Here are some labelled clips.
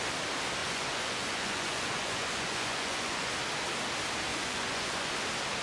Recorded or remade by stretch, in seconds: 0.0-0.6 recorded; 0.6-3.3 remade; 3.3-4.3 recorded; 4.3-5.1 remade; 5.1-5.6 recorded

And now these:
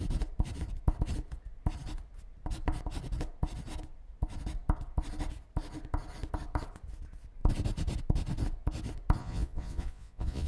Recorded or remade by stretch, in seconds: 0.0-9.2 recorded; 9.2-10.5 remade

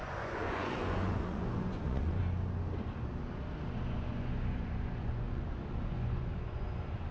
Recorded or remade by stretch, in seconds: 0.0-2.2 remade; 2.2-3.9 recorded; 3.9-7.1 remade

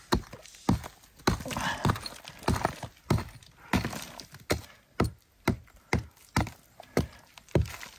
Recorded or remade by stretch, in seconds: 0.0-8.0 recorded